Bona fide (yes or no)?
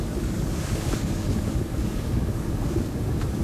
no